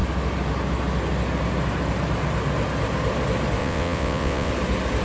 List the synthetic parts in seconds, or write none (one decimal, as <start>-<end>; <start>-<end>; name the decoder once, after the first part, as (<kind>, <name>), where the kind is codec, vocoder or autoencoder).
3.6-4.5 (vocoder, WaveNeXt)